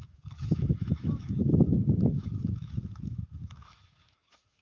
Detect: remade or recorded remade